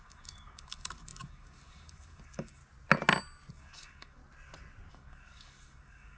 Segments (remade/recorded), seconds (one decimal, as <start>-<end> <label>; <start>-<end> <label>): 0.0-2.6 remade; 2.6-3.5 recorded; 3.5-4.2 remade; 4.2-4.9 recorded; 4.9-6.2 remade